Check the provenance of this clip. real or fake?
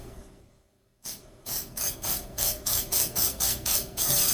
fake